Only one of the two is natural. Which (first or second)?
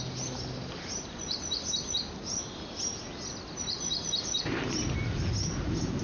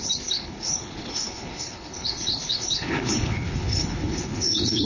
first